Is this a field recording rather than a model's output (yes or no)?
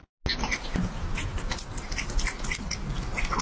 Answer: yes